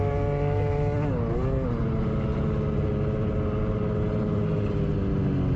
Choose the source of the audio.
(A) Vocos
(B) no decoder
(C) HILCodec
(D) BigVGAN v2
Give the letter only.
B